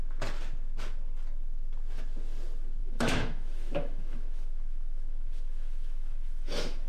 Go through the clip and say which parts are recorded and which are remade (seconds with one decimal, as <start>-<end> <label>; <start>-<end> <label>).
0.0-2.8 recorded; 2.8-6.9 remade